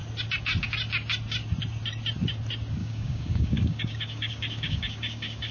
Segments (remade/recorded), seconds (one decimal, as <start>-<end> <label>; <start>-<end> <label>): 0.0-2.8 recorded; 2.8-5.5 remade